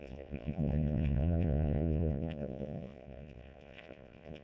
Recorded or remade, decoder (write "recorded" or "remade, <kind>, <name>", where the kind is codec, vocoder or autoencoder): remade, vocoder, Vocos